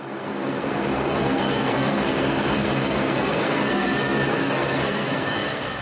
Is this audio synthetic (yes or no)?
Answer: yes